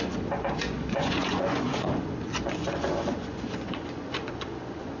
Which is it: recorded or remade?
remade